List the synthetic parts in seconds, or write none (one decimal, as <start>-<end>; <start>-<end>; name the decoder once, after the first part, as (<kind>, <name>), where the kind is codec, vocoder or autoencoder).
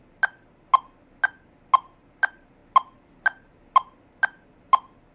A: none